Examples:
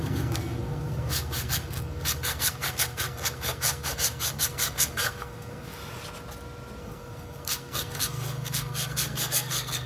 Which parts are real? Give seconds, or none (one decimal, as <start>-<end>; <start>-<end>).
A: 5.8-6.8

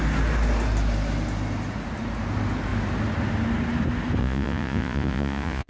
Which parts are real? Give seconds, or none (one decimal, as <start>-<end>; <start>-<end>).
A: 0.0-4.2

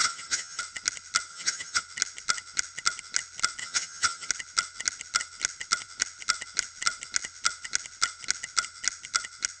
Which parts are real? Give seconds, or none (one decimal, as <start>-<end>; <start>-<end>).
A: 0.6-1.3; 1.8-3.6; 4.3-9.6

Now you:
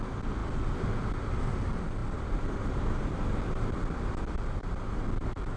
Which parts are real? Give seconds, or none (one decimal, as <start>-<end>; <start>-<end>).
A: 0.0-2.0; 3.0-5.6

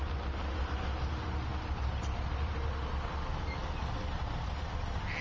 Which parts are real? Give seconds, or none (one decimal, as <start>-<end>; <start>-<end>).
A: 0.0-5.2